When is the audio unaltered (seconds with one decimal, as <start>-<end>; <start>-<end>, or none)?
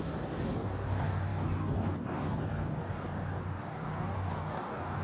none